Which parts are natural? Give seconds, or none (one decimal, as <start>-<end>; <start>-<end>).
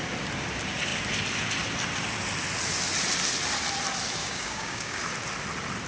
0.0-4.2; 5.0-5.9